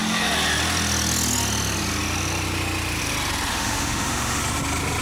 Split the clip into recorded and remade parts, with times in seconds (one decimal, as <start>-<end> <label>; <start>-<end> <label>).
0.0-3.5 recorded; 3.5-4.4 remade; 4.4-5.0 recorded